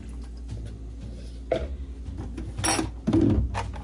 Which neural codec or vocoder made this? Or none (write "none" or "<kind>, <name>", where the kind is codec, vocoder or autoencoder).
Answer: none